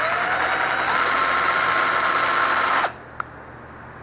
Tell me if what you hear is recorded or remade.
recorded